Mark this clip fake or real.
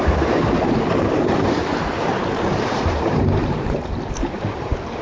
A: fake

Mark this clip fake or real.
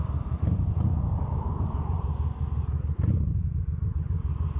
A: real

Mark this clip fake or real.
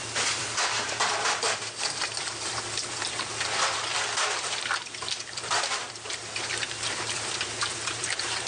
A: fake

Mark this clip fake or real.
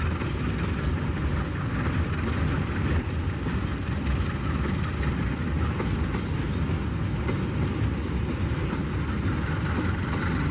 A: real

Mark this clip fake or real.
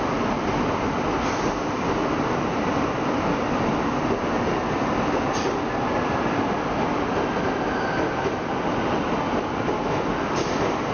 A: real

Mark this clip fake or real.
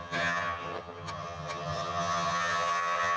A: fake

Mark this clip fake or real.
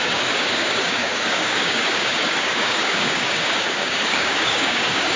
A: fake